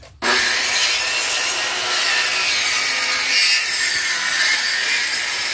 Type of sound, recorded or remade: recorded